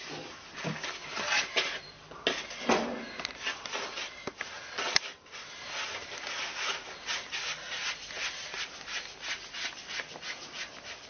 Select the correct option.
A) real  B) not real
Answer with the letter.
A